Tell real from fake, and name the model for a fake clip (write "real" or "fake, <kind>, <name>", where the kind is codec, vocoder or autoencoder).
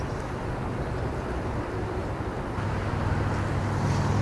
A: real